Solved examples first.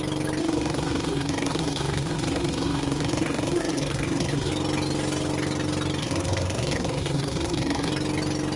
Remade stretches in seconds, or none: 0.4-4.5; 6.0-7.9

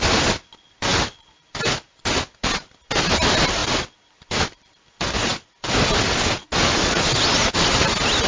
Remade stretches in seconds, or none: none